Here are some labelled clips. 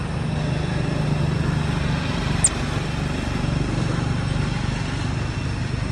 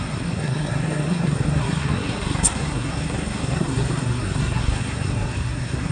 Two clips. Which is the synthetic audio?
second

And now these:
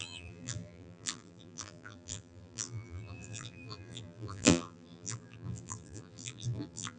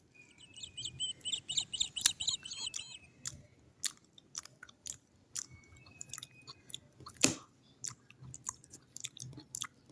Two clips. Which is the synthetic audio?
first